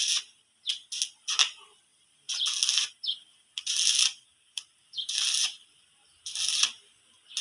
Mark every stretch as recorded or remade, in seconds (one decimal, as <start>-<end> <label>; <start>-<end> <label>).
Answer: 0.0-5.4 recorded; 5.4-6.5 remade; 6.5-7.4 recorded